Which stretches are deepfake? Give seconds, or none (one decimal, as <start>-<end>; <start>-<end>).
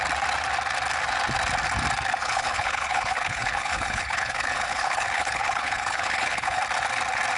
2.2-6.6